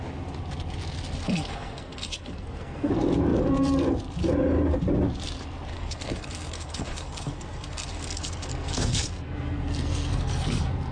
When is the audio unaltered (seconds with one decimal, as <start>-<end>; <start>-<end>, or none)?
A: 0.0-1.2; 2.9-5.7